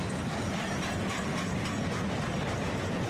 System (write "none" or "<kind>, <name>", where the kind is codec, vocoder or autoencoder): none